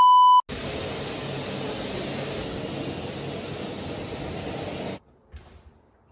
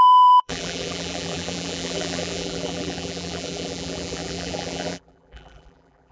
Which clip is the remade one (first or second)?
second